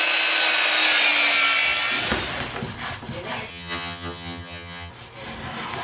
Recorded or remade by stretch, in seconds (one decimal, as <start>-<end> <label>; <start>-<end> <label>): 0.0-3.5 recorded; 3.5-4.9 remade; 4.9-5.8 recorded